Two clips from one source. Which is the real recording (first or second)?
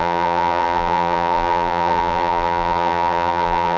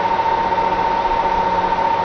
second